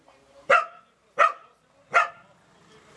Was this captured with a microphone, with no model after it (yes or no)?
yes